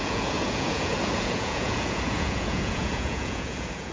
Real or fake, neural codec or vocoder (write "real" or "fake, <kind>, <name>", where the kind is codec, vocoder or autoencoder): fake, vocoder, Vocos